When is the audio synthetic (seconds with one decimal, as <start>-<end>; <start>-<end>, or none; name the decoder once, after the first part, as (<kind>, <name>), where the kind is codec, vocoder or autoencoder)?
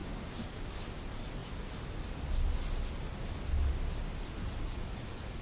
0.0-0.7 (codec, DAC)